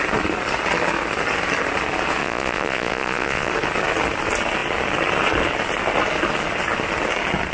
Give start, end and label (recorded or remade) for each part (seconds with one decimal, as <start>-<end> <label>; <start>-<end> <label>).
0.0-2.2 recorded; 2.2-3.5 remade; 3.5-7.5 recorded